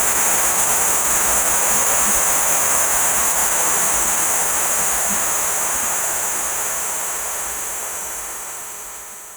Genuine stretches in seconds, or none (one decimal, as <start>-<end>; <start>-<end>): none